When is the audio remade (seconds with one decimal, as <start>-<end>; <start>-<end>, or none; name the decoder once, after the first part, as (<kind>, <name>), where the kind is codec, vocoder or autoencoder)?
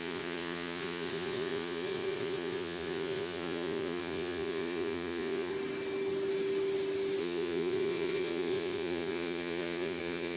0.0-5.5 (vocoder, Vocos); 7.2-10.4